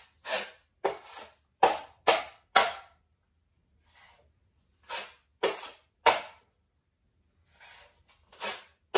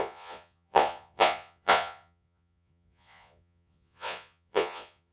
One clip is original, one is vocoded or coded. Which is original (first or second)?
first